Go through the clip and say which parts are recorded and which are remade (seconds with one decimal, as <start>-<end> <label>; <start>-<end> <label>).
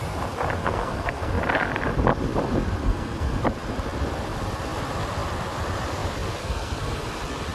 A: 0.0-0.6 recorded; 0.6-1.3 remade; 1.3-2.8 recorded; 2.8-3.4 remade; 3.4-6.4 recorded; 6.4-7.1 remade; 7.1-7.5 recorded